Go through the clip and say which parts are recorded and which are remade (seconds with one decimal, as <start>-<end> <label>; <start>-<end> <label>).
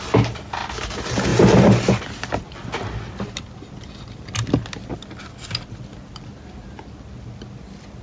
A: 0.0-8.0 recorded